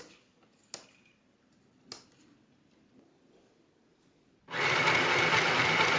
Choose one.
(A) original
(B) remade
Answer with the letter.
A